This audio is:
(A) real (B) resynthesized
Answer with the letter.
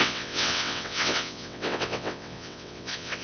B